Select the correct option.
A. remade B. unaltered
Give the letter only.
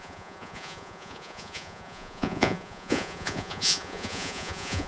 A